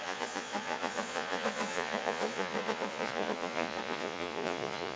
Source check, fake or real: fake